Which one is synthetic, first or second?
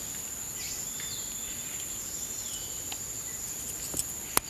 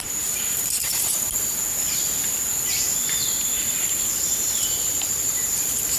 second